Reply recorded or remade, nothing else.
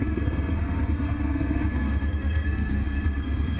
remade